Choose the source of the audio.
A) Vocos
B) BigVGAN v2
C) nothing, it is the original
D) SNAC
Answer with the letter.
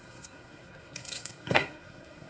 D